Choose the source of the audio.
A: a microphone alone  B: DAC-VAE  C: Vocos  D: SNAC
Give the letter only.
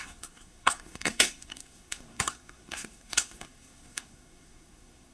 D